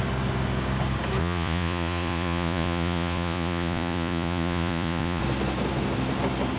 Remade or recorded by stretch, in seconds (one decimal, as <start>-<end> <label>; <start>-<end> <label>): 0.0-1.2 recorded; 1.2-5.2 remade; 5.2-6.6 recorded